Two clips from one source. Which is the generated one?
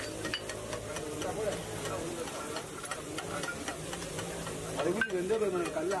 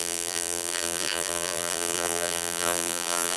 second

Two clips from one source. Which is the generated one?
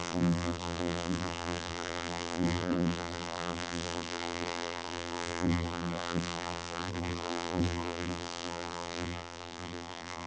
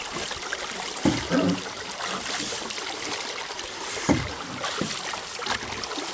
first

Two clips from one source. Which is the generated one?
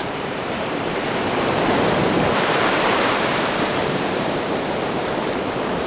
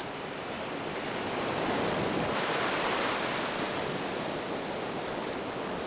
first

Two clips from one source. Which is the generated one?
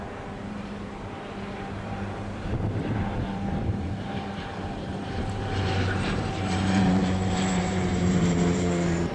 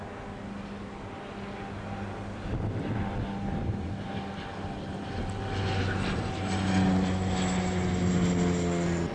first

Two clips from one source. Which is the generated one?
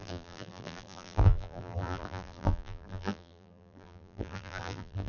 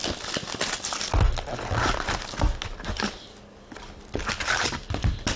first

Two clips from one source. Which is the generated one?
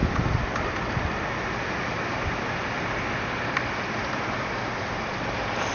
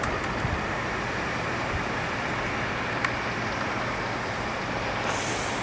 first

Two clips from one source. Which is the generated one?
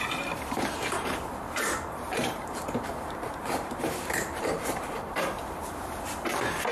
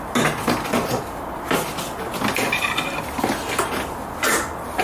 first